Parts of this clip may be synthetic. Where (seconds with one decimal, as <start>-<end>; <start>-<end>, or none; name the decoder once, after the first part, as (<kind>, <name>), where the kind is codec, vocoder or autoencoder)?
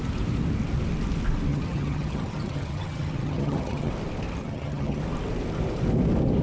1.5-3.9 (vocoder, HiFi-GAN); 4.4-5.0